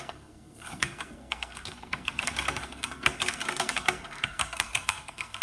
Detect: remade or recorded remade